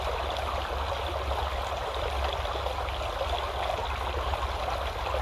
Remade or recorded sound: recorded